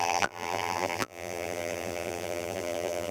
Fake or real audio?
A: fake